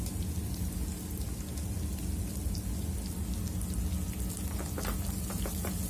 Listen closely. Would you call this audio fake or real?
real